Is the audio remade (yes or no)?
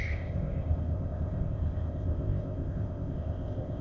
yes